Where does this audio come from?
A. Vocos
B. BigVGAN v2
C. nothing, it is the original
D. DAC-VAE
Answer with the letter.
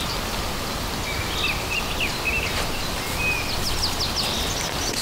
C